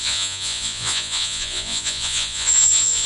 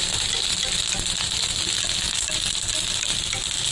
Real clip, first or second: second